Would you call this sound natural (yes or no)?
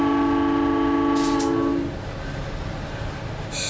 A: yes